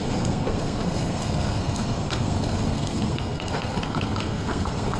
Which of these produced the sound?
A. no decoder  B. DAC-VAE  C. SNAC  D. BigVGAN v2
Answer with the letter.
C